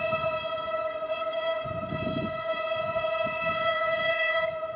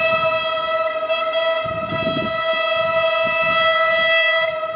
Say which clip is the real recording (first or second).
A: second